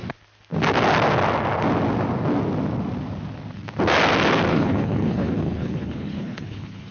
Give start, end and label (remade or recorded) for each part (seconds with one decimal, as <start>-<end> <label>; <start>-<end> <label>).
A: 0.0-4.5 recorded; 4.5-6.9 remade